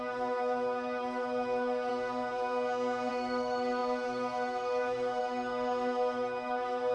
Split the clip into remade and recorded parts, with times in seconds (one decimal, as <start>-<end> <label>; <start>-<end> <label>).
0.0-1.9 remade; 1.9-3.1 recorded; 3.1-6.9 remade